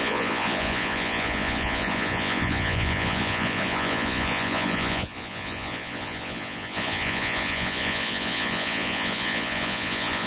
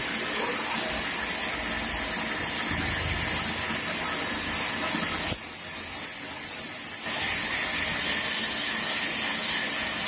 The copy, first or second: first